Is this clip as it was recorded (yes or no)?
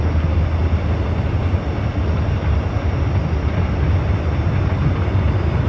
yes